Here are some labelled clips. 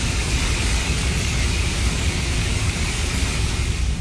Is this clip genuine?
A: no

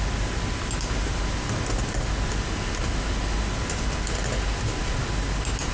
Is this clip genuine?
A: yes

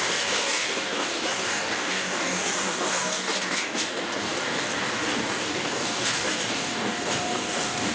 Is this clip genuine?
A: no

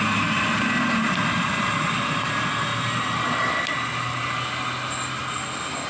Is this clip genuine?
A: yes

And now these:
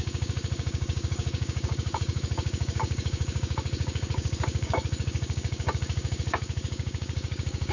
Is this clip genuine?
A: no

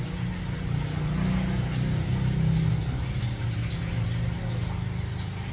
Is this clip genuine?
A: yes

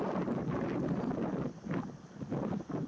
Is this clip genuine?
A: yes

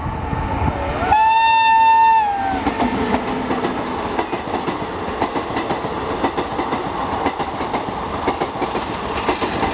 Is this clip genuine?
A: yes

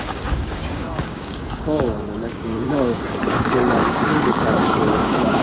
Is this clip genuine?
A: no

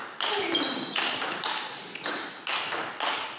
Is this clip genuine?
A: yes